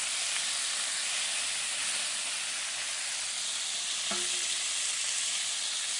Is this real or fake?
real